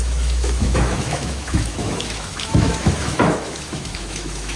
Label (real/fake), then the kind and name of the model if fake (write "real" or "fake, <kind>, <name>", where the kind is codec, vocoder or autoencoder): fake, autoencoder, DAC-VAE